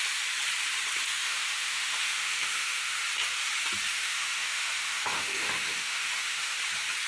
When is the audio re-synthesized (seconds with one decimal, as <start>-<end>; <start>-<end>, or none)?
1.1-3.0; 3.9-6.6